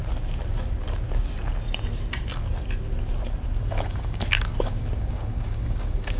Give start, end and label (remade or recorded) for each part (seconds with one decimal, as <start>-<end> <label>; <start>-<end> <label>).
0.0-3.7 recorded; 3.7-6.2 remade